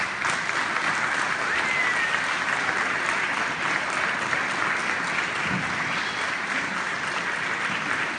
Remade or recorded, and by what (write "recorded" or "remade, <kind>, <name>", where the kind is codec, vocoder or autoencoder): recorded